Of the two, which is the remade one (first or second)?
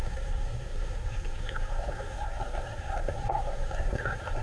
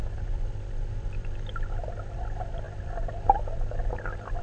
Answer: first